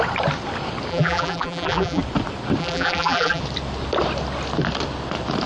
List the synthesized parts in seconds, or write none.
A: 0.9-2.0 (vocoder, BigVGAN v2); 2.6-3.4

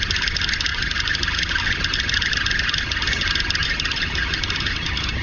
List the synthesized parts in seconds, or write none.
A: 3.6-5.2 (vocoder, BigVGAN v2)